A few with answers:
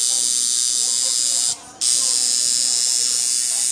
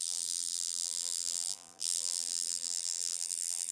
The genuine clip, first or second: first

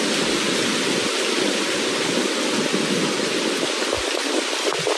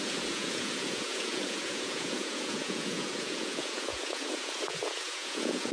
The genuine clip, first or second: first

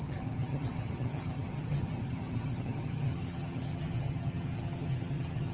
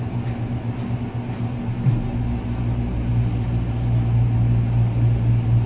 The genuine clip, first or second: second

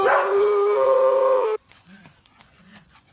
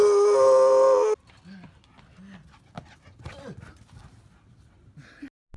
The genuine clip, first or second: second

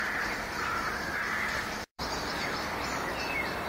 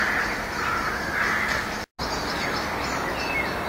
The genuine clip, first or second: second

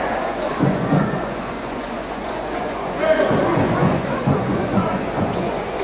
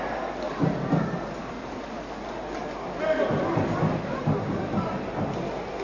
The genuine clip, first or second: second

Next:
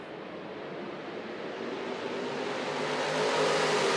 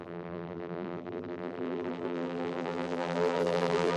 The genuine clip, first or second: first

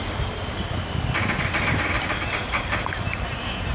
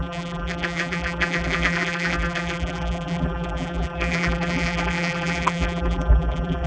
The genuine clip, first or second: first